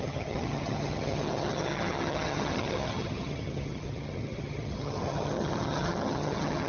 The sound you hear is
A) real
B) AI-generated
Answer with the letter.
B